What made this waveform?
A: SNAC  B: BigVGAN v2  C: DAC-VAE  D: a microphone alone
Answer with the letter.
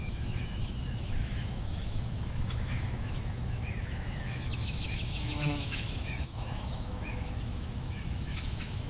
C